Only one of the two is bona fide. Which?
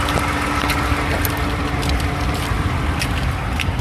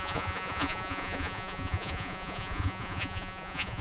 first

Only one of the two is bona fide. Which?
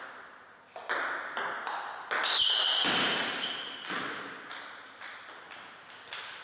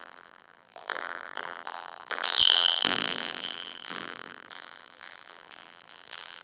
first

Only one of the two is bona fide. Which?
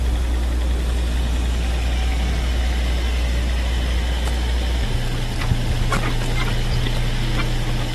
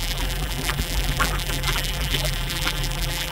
first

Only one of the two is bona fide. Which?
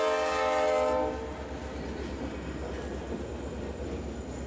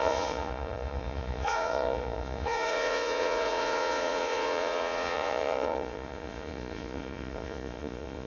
first